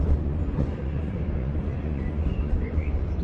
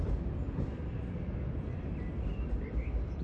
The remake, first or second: first